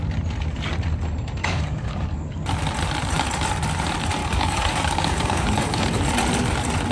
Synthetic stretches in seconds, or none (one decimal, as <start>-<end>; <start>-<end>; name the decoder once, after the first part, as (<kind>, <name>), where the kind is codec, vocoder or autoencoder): 1.4-2.4 (codec, DAC); 4.2-6.0